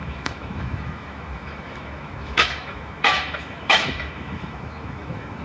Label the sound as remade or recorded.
remade